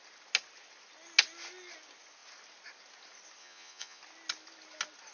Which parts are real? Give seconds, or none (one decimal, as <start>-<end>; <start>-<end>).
0.0-3.4; 4.0-5.1